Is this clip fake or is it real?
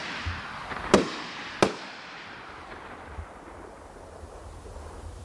real